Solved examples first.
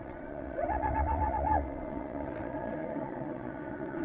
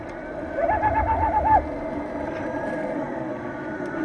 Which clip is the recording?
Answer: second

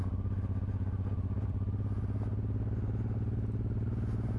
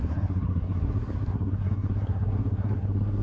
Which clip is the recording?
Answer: first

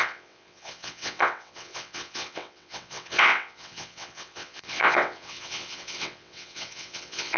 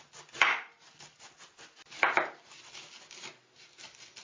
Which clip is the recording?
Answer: second